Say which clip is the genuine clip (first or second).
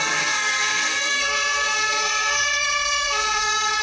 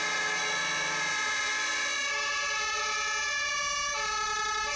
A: second